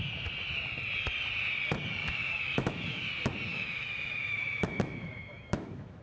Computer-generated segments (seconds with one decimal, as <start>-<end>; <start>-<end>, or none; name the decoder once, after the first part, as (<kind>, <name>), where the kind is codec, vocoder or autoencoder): 2.0-3.1 (autoencoder, DAC-VAE); 3.5-6.0